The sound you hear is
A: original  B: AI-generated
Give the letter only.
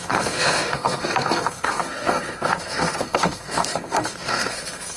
B